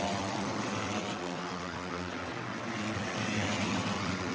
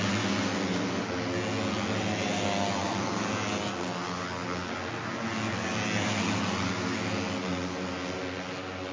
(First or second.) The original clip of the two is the second